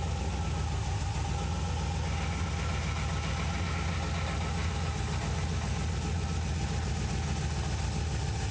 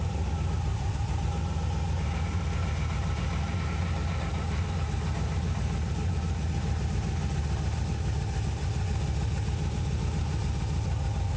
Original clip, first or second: first